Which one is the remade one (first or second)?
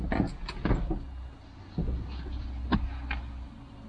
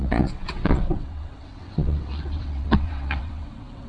second